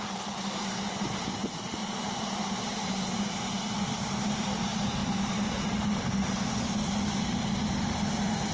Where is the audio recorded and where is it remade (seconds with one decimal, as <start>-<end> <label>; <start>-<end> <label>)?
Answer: 0.0-1.8 recorded; 1.8-2.9 remade; 2.9-5.0 recorded; 5.0-6.0 remade; 6.0-8.5 recorded